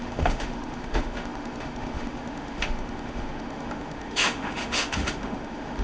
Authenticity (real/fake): fake